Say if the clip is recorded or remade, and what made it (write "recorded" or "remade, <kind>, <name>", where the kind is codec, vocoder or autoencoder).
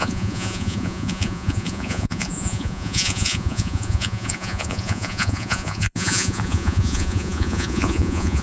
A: remade, vocoder, Vocos